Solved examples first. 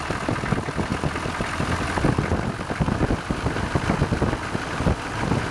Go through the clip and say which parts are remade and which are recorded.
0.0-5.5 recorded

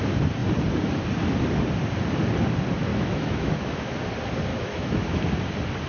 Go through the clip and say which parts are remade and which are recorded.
0.0-2.9 recorded; 2.9-3.9 remade; 3.9-4.5 recorded; 4.5-5.2 remade; 5.2-5.9 recorded

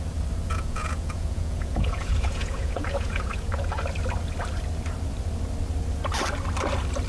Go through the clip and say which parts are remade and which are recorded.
0.0-0.5 recorded; 0.5-3.8 remade; 3.8-7.1 recorded